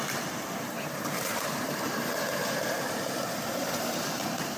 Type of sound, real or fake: fake